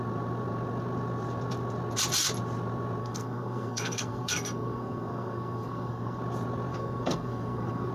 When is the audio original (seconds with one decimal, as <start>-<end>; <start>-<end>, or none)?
0.0-3.0; 6.2-6.7